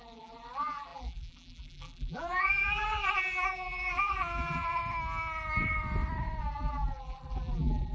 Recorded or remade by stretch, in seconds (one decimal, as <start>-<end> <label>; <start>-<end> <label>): 0.0-4.8 remade; 4.8-6.4 recorded; 6.4-7.9 remade